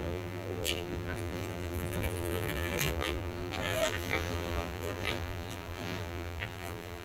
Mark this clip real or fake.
fake